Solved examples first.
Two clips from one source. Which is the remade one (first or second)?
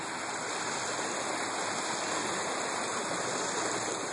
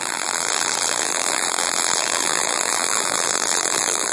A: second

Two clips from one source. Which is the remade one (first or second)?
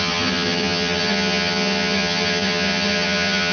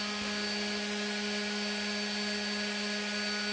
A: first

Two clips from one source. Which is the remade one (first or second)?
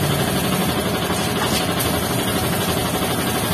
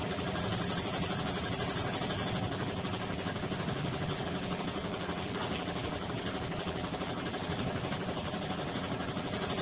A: second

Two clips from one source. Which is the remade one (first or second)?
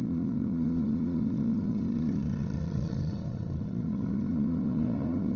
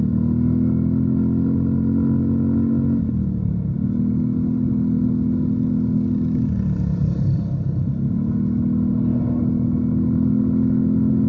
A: first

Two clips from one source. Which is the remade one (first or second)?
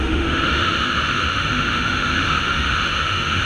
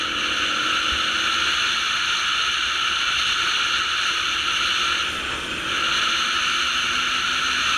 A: first